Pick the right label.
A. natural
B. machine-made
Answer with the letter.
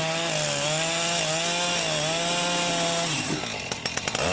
A